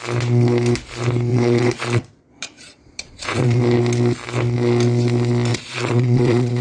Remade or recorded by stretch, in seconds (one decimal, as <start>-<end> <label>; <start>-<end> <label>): 0.0-1.3 recorded; 1.3-3.6 remade; 3.6-5.5 recorded; 5.5-6.6 remade